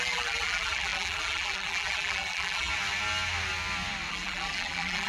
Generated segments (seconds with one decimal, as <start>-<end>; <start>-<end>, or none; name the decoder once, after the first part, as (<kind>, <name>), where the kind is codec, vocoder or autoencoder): 0.0-2.7 (vocoder, BigVGAN v2); 4.1-5.1